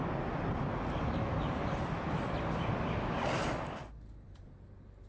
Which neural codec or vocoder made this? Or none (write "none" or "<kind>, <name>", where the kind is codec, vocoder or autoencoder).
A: vocoder, BigVGAN v2